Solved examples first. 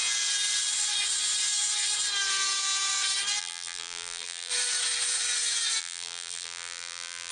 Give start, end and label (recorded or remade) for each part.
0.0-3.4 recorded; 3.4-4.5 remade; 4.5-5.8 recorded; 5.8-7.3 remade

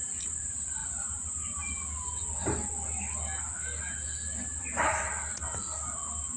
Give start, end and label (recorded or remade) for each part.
0.0-0.8 remade; 0.8-4.6 recorded; 4.6-5.1 remade; 5.1-6.4 recorded

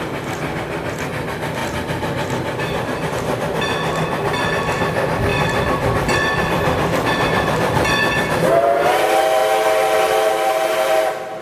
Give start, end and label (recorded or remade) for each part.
0.0-5.3 recorded; 5.3-8.5 remade; 8.5-11.4 recorded

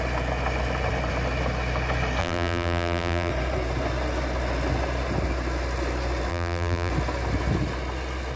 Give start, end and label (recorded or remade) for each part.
0.0-2.2 recorded; 2.2-3.3 remade; 3.3-6.3 recorded; 6.3-6.9 remade; 6.9-8.4 recorded

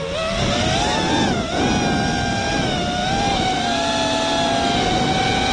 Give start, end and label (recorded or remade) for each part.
0.0-2.4 recorded; 2.4-3.7 remade; 3.7-5.5 recorded

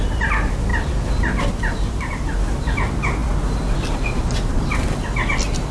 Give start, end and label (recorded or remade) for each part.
0.0-0.7 recorded; 0.7-1.5 remade; 1.5-3.2 recorded; 3.2-4.5 remade; 4.5-5.7 recorded